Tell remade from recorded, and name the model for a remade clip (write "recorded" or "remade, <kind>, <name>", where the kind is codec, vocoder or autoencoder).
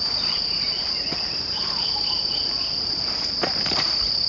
recorded